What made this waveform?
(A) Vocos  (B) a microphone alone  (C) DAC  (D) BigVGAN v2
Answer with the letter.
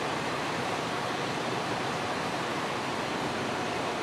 D